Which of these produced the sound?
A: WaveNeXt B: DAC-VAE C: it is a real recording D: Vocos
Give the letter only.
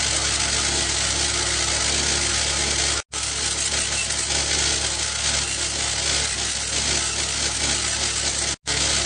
C